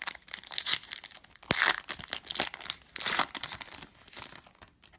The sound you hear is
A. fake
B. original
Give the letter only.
B